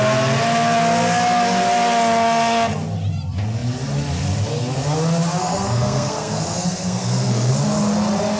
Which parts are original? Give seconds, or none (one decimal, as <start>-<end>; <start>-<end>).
0.0-5.4; 7.5-8.4